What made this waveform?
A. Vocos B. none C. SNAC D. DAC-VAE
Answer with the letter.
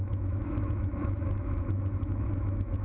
D